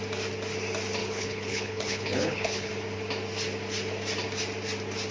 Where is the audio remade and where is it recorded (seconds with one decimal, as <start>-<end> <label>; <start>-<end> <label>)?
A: 0.0-1.0 recorded; 1.0-2.7 remade; 2.7-5.1 recorded